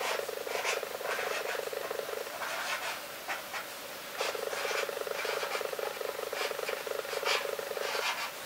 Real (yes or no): yes